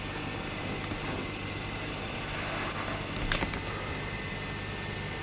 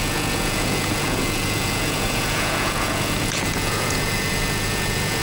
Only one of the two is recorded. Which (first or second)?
first